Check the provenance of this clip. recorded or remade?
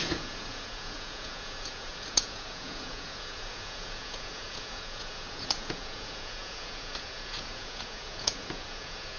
remade